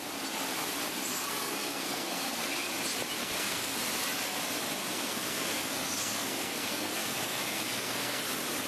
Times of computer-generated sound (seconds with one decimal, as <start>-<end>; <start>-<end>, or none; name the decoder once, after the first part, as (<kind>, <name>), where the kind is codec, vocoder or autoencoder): 1.1-2.7 (codec, SNAC); 3.2-3.8; 4.8-8.2